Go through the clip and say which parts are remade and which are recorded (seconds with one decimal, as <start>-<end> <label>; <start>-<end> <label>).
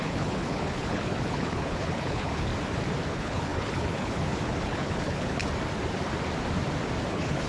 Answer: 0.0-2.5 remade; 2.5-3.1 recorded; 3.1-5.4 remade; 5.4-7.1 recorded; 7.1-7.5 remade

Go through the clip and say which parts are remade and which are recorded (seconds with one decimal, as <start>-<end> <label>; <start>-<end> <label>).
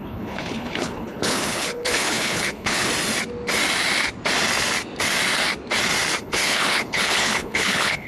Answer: 0.0-2.9 remade; 2.9-6.2 recorded; 6.2-8.1 remade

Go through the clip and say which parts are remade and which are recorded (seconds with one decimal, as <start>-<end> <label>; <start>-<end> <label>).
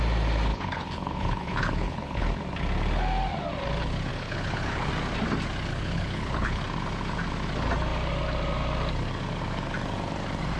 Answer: 0.0-0.5 recorded; 0.5-2.2 remade; 2.2-4.1 recorded; 4.1-4.9 remade; 4.9-5.7 recorded; 5.7-6.6 remade; 6.6-10.6 recorded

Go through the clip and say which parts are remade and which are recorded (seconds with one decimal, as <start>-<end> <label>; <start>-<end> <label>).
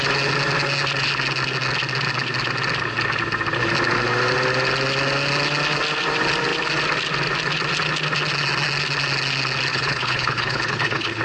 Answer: 0.0-9.7 recorded; 9.7-11.2 remade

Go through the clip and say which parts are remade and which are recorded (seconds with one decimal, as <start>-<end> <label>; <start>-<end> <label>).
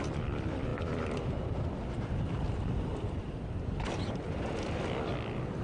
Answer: 0.0-5.6 recorded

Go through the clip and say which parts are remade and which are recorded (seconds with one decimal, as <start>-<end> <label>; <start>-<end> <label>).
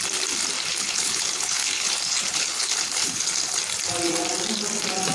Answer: 0.0-0.7 recorded; 0.7-3.6 remade; 3.6-5.1 recorded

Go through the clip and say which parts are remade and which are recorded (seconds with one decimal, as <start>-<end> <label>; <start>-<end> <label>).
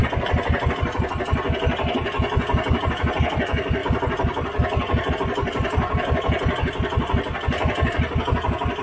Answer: 0.0-8.8 recorded